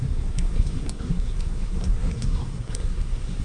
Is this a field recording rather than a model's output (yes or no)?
no